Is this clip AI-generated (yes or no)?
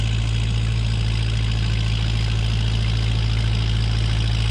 no